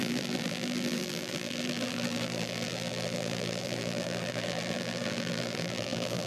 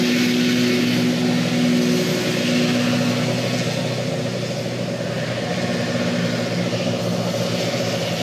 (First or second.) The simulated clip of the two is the first